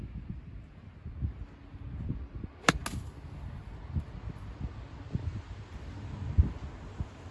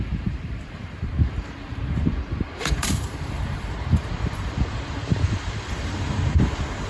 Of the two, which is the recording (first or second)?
first